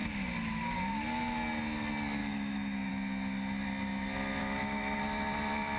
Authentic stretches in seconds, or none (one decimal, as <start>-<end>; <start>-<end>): 0.0-2.2; 2.9-4.4; 5.0-5.8